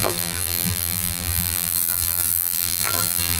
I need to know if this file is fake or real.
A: fake